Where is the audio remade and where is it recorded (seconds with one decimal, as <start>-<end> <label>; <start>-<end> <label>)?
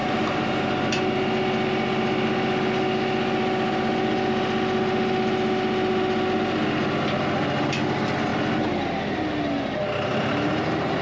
0.0-0.6 remade; 0.6-11.0 recorded